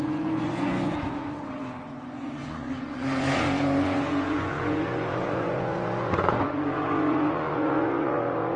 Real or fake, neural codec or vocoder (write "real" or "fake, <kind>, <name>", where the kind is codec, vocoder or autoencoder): fake, vocoder, Vocos